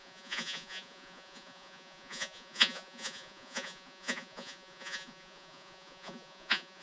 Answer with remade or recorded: remade